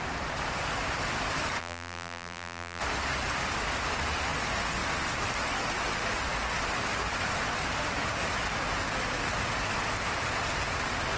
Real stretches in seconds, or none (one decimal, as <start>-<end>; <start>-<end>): 0.0-1.6; 2.8-11.2